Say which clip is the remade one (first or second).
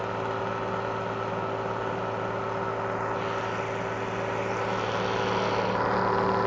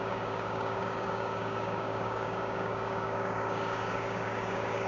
second